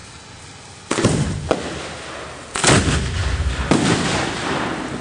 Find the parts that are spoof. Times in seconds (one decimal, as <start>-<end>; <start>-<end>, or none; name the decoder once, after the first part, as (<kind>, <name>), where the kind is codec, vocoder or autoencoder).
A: none